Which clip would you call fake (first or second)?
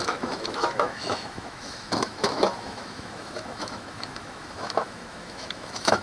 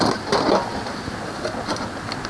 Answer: first